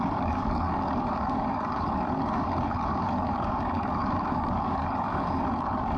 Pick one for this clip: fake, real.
fake